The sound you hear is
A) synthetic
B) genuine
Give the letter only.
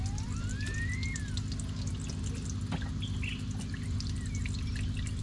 B